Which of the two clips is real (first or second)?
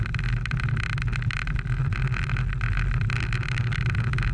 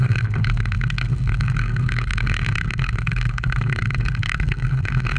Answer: first